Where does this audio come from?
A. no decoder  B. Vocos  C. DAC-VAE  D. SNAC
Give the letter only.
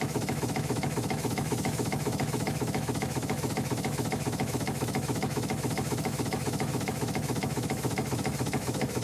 C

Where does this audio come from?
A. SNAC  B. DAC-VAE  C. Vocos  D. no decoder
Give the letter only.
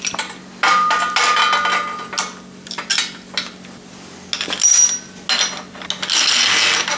D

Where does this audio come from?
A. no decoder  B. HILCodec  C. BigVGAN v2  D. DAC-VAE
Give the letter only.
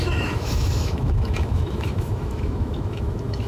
D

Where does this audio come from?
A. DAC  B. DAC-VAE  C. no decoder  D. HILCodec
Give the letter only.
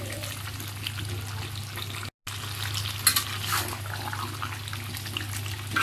C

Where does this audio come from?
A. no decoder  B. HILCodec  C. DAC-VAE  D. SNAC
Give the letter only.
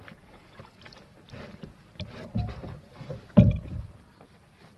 A